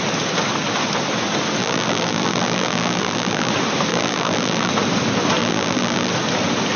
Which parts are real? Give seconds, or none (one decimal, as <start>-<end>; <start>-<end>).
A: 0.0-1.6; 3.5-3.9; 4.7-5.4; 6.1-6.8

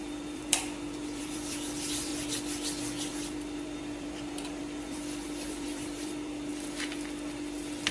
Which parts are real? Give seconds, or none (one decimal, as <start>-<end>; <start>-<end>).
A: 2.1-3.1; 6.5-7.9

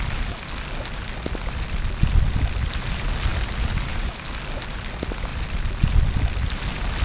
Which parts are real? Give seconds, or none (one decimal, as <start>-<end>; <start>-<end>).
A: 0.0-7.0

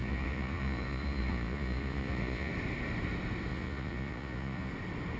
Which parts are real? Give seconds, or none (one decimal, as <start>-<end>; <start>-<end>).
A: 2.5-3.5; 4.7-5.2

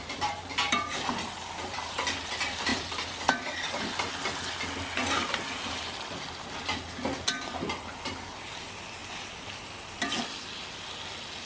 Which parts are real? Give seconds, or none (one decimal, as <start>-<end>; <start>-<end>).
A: 0.0-11.5